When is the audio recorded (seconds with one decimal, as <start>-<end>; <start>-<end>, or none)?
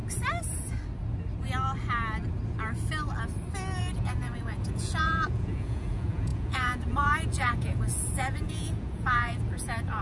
0.0-3.8